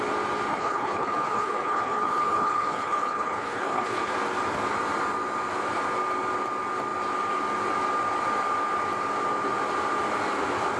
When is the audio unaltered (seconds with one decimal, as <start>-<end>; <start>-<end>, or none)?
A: 0.0-0.5; 4.1-10.8